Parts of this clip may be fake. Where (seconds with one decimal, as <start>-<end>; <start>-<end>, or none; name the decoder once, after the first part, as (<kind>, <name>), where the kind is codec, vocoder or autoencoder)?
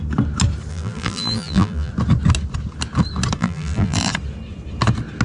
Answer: 0.7-1.9 (vocoder, BigVGAN v2); 3.4-4.1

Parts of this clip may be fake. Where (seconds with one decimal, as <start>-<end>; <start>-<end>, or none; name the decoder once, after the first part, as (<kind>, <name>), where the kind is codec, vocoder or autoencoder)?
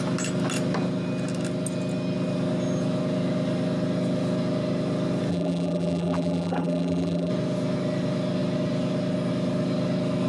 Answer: 5.3-7.3 (vocoder, BigVGAN v2)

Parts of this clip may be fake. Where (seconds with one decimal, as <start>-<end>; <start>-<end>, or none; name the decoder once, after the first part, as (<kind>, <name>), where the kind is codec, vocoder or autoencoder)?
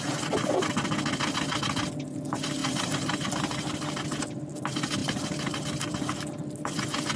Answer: 2.6-4.2 (vocoder, BigVGAN v2); 5.0-5.6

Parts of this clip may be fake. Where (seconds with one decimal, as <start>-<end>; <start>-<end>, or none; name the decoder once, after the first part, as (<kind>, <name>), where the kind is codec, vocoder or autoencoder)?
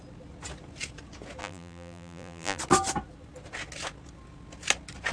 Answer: 1.4-2.6 (vocoder, BigVGAN v2)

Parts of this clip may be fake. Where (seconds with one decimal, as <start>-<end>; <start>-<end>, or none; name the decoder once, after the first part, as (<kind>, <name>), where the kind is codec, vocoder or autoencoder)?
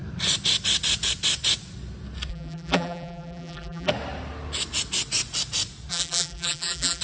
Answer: 2.3-3.9 (vocoder, BigVGAN v2); 5.9-7.0